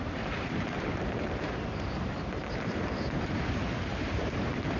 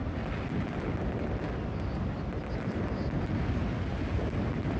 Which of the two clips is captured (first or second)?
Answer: second